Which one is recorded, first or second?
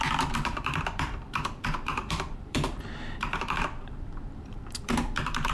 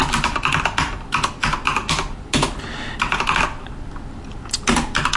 second